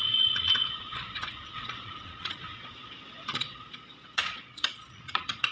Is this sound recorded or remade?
remade